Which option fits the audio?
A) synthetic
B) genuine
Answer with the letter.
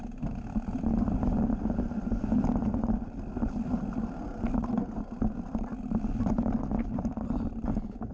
B